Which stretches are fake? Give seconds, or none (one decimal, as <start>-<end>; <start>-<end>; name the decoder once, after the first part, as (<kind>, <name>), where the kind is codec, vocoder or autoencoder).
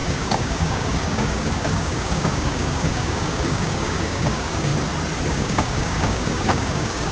0.0-4.7 (codec, DAC); 5.3-7.1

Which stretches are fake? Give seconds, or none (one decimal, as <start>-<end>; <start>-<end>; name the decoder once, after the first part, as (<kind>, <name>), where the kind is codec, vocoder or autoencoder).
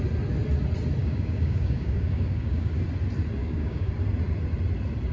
1.0-2.7 (codec, DAC); 3.4-3.9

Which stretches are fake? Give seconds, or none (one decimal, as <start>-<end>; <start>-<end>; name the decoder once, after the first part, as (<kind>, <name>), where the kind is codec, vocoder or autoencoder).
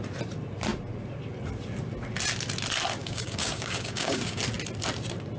3.0-4.4 (codec, DAC)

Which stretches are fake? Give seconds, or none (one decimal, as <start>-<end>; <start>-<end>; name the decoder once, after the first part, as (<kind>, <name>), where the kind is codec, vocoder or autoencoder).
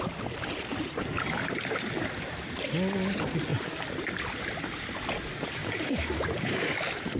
5.6-6.7 (codec, DAC)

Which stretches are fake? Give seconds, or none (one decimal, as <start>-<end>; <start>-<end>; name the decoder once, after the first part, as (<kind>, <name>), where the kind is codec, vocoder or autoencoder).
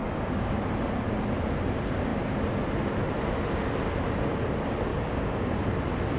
0.0-0.6 (codec, DAC); 4.9-5.5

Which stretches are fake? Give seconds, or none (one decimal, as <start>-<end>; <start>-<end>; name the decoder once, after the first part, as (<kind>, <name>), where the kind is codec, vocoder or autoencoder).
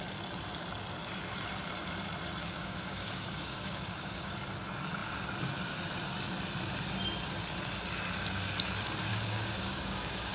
2.4-4.3 (codec, DAC); 9.1-10.3